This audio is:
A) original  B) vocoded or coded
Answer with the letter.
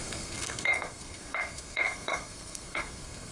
B